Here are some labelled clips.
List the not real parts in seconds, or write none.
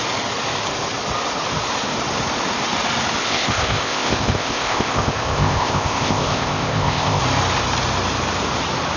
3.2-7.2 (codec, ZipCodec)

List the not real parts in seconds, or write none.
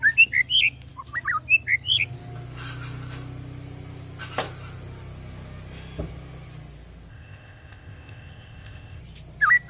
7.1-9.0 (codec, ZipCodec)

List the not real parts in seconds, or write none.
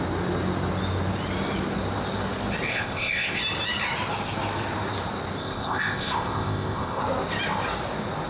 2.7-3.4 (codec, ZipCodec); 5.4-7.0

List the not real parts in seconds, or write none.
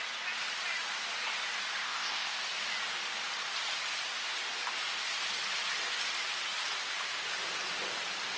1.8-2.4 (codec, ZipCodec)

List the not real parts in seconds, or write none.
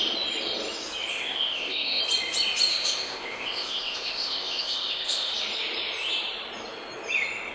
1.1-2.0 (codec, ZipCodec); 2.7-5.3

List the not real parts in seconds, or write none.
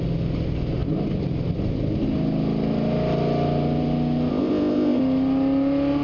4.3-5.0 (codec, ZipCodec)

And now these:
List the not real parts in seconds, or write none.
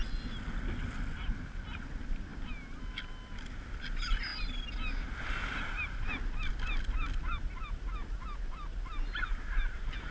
none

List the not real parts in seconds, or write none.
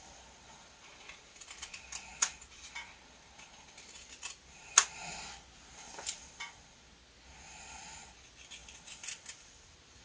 none